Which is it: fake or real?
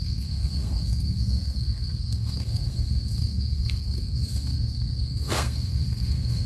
fake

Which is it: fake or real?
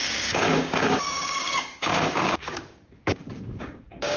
fake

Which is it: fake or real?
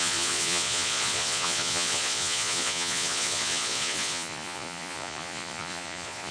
fake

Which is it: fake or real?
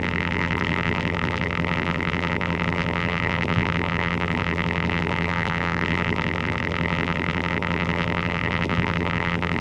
fake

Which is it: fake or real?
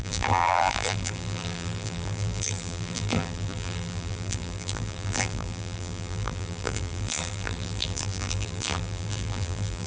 fake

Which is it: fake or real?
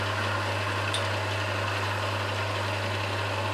real